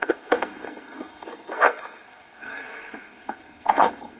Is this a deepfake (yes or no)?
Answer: yes